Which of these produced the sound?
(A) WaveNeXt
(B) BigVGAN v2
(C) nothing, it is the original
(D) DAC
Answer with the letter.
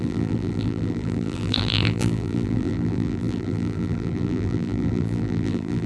B